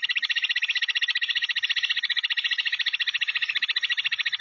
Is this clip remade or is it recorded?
recorded